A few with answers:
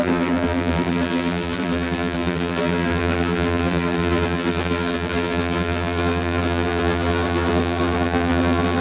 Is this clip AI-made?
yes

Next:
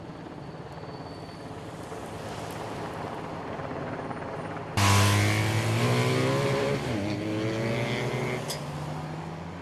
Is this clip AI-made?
no